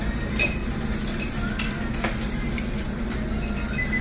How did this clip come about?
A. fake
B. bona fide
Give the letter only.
B